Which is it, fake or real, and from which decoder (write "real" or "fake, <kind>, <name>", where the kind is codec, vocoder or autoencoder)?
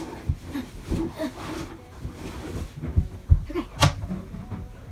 real